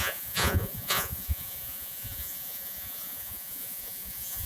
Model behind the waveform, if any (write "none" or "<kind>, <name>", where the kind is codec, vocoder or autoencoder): vocoder, Vocos